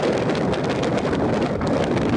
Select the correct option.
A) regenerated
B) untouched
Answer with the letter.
B